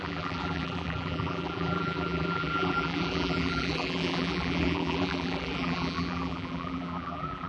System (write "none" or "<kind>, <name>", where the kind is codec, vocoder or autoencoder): vocoder, BigVGAN v2